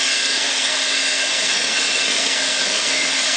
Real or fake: fake